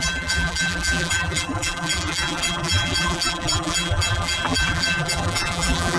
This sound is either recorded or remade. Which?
remade